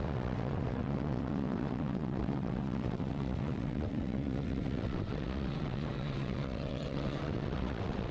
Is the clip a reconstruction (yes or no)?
yes